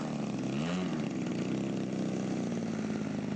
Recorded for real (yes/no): yes